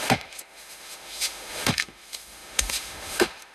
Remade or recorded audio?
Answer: remade